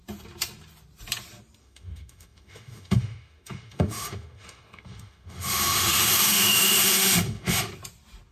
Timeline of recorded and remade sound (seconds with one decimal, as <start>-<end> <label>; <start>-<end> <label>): 0.0-1.6 recorded; 1.6-7.7 remade; 7.7-8.3 recorded